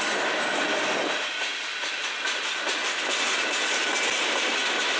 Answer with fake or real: real